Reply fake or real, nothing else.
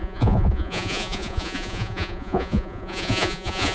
fake